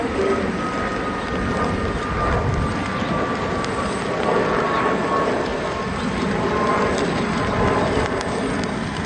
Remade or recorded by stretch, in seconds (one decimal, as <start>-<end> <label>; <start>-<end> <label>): 0.0-9.1 recorded